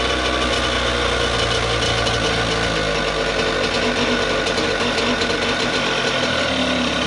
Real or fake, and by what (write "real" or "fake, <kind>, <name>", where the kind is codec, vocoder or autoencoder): real